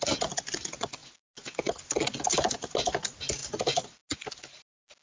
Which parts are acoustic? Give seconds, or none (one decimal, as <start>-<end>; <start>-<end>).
0.0-5.0

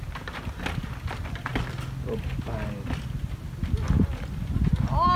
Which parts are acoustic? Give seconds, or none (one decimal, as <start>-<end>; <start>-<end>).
0.0-5.2

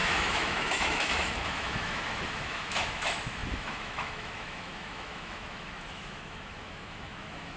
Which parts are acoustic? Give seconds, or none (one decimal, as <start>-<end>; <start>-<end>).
none

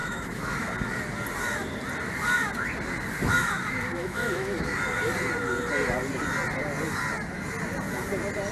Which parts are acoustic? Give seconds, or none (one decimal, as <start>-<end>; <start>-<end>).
0.7-3.4; 4.8-8.5

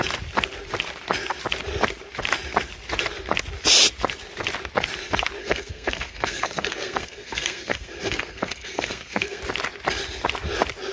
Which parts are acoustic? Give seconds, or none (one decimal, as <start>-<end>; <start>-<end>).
0.0-5.4; 9.4-10.9

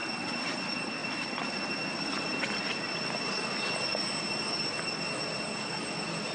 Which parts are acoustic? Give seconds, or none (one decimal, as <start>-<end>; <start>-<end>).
0.0-6.3